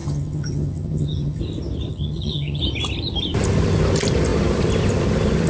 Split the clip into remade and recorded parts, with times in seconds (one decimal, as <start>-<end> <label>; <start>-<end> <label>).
0.0-1.4 remade; 1.4-1.9 recorded; 1.9-2.6 remade; 2.6-5.5 recorded